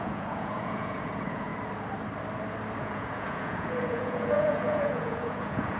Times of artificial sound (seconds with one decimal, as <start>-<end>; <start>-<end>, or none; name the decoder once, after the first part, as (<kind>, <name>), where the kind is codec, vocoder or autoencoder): 0.0-1.5 (vocoder, Vocos); 2.8-5.8